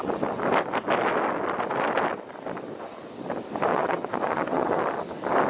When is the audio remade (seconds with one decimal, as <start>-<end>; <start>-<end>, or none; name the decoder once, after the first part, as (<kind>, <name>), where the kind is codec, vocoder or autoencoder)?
3.7-4.8 (vocoder, WaveNeXt)